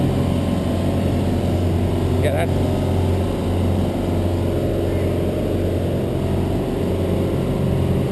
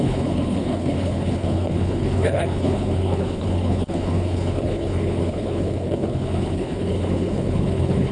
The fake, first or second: second